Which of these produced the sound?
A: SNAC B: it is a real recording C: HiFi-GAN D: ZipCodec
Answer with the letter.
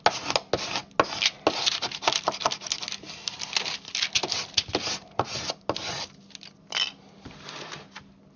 B